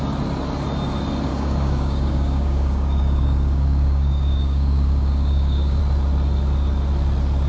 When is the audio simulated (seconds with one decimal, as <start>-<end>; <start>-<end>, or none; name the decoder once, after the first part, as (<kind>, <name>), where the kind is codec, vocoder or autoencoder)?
1.3-5.8 (codec, DAC)